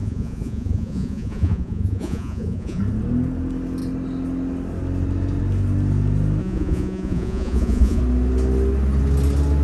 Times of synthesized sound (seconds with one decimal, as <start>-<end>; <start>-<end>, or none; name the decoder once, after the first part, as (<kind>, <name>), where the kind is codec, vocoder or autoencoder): 0.0-2.8 (vocoder, Vocos); 6.4-8.0